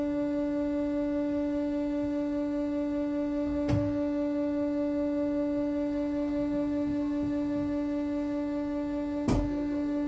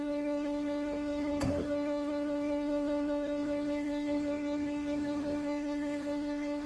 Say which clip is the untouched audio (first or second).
first